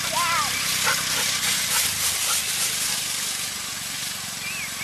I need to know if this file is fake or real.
real